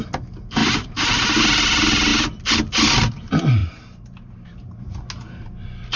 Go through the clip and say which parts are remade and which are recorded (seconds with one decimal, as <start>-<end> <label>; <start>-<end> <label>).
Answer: 0.0-0.6 recorded; 0.6-1.4 remade; 1.4-3.6 recorded; 3.6-4.9 remade; 4.9-6.0 recorded